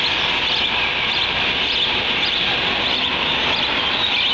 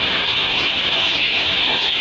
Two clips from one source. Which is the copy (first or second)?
second